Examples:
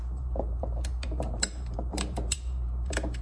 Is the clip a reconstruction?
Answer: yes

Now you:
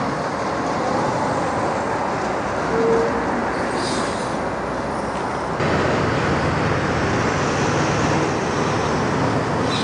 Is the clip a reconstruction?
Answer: no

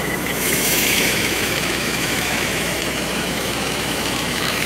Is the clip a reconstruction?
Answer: yes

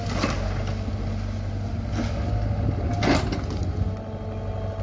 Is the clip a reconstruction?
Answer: no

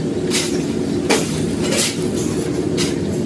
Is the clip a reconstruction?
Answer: no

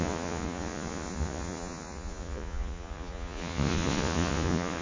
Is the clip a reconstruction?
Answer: yes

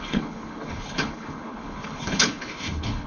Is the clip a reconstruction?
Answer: yes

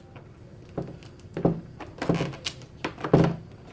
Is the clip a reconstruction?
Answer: no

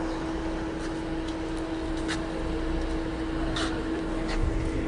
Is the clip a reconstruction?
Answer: no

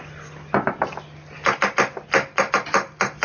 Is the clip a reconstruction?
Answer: no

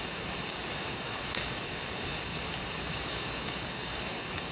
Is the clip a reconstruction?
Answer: yes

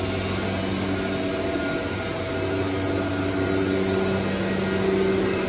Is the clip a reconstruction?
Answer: no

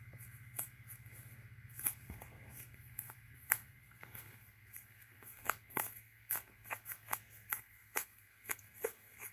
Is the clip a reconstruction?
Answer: yes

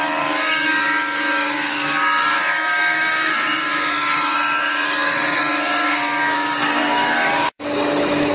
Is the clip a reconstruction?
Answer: yes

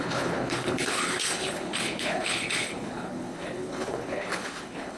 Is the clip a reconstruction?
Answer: yes